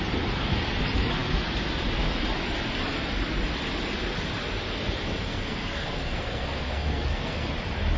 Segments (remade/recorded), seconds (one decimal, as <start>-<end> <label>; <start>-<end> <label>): 0.0-5.3 recorded; 5.3-7.5 remade; 7.5-8.0 recorded